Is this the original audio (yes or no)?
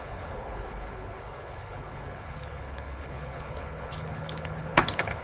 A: no